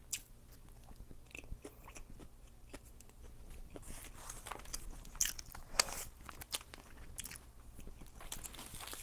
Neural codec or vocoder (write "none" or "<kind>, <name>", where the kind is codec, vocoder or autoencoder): none